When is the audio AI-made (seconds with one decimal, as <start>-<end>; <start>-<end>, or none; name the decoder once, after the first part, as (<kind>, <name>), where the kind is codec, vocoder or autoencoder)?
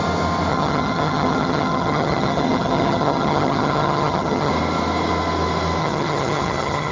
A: 0.5-4.5 (vocoder, HiFi-GAN); 5.8-6.9